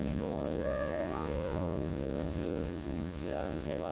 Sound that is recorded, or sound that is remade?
remade